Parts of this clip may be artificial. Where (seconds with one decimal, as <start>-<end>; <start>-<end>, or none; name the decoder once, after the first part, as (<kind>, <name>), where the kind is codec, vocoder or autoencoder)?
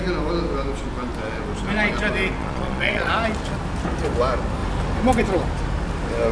2.4-3.1 (vocoder, Vocos)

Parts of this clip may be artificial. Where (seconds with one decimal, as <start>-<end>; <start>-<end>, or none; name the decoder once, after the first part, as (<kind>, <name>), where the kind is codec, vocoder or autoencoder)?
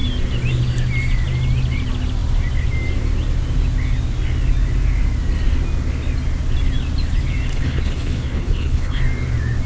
7.5-9.0 (codec, HILCodec)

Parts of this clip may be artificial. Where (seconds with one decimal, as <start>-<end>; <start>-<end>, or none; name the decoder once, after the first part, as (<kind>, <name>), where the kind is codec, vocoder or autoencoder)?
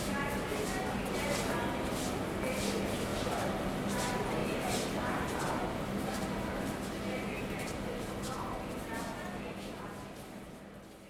3.1-3.6 (vocoder, BigVGAN v2); 4.4-8.0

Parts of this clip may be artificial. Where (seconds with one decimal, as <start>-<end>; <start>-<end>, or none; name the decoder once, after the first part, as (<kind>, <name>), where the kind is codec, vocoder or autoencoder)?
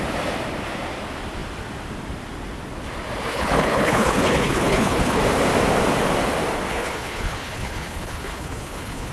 3.3-5.2 (codec, HILCodec); 6.7-9.1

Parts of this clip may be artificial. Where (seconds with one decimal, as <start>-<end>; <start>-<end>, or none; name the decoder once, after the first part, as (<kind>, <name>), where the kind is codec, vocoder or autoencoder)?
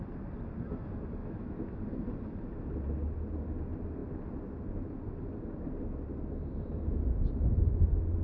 1.2-1.8 (autoencoder, DAC-VAE)